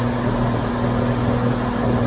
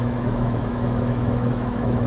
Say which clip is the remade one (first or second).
second